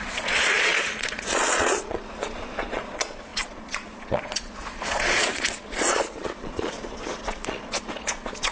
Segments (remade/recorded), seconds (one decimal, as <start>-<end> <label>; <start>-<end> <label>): 0.0-8.5 remade